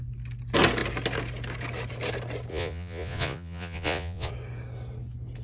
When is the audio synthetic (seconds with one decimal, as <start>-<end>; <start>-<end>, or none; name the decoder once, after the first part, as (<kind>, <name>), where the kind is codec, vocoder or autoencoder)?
2.5-4.3 (vocoder, Vocos)